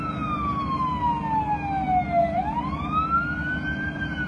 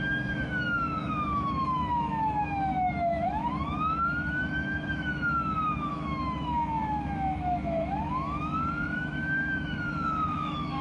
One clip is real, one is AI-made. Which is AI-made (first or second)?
second